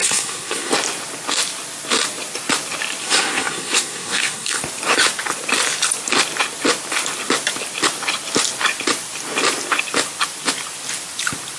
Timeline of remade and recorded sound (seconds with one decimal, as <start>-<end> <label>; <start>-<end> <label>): 0.0-0.7 remade; 0.7-3.0 recorded; 3.0-4.6 remade; 4.6-11.6 recorded